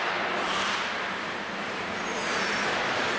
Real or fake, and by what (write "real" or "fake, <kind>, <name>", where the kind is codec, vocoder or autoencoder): fake, vocoder, BigVGAN v2